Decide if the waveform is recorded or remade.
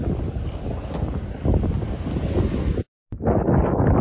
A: recorded